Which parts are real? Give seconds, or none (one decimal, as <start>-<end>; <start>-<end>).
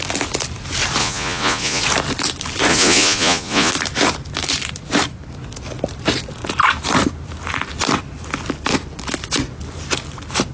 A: 0.0-1.0; 1.8-2.7; 3.7-10.5